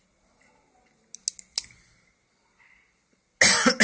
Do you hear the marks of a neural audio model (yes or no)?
no